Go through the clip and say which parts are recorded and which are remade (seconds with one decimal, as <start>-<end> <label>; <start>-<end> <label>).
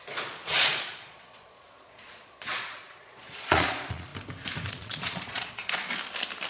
0.0-4.1 remade; 4.1-4.7 recorded; 4.7-5.8 remade; 5.8-6.5 recorded